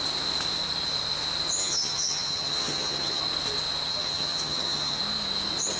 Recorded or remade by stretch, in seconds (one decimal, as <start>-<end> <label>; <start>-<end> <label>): 0.0-1.6 recorded; 1.6-3.2 remade; 3.2-3.9 recorded; 3.9-5.0 remade; 5.0-5.8 recorded